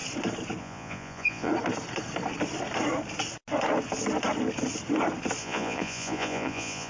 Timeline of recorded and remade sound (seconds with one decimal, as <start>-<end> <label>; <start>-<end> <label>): 0.0-0.6 recorded; 0.6-1.5 remade; 1.5-5.4 recorded; 5.4-6.9 remade